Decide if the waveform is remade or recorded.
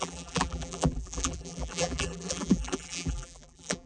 remade